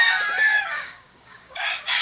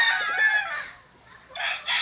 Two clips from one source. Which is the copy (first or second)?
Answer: first